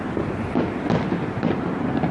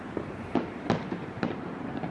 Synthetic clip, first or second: second